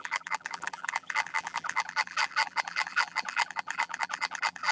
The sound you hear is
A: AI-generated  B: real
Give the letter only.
A